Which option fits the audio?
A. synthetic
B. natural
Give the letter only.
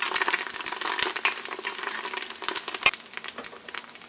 B